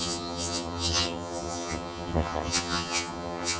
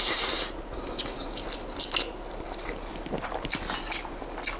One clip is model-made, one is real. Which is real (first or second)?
second